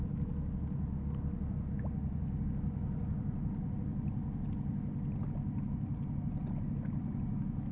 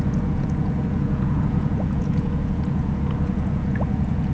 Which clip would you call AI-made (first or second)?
second